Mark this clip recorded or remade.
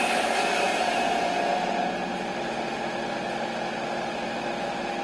recorded